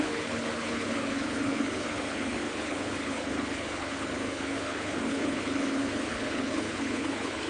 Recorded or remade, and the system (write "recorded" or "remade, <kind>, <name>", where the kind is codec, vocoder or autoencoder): remade, codec, HILCodec